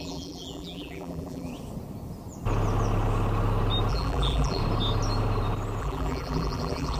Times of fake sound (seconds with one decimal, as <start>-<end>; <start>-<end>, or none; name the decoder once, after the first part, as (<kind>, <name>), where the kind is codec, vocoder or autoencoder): 0.0-1.5 (vocoder, BigVGAN v2); 3.9-4.6; 5.8-7.0